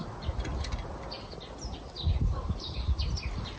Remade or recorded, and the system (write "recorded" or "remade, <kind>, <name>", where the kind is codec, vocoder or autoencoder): recorded